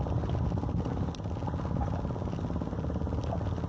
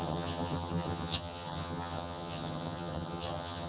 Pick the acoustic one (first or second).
first